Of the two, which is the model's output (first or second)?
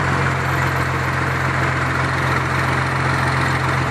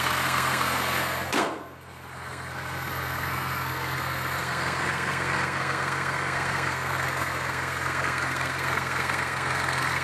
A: second